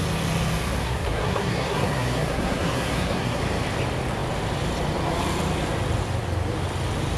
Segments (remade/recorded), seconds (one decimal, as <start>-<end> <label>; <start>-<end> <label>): 0.0-0.8 recorded; 0.8-3.4 remade; 3.4-7.2 recorded